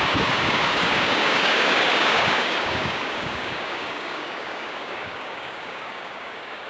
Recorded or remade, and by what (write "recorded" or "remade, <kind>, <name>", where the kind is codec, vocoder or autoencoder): remade, codec, DAC